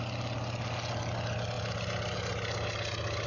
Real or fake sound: real